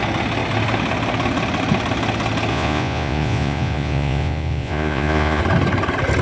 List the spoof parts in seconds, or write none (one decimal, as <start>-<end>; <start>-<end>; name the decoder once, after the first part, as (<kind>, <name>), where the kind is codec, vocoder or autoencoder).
2.5-5.4 (vocoder, Vocos)